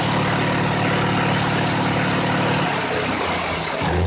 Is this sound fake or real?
real